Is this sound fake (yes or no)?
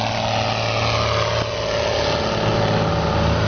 no